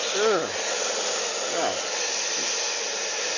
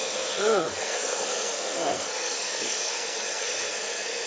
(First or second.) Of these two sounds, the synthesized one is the second